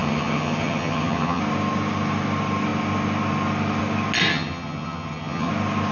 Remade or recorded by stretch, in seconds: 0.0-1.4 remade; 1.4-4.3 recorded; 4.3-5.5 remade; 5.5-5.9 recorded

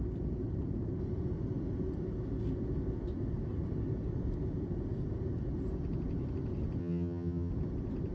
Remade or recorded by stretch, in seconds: 0.0-6.8 recorded; 6.8-7.5 remade; 7.5-8.1 recorded

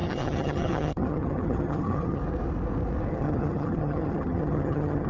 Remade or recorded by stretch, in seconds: 0.0-2.2 remade; 2.2-3.1 recorded; 3.1-5.1 remade

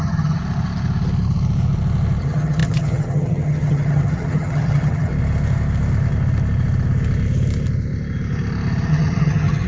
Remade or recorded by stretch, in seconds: 0.0-0.4 remade; 0.4-2.2 recorded; 2.2-5.1 remade; 5.1-8.9 recorded; 8.9-9.7 remade

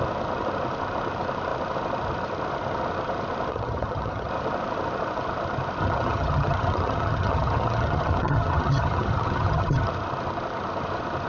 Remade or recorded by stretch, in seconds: 0.0-3.5 recorded; 3.5-4.3 remade; 4.3-5.8 recorded; 5.8-9.9 remade; 9.9-11.3 recorded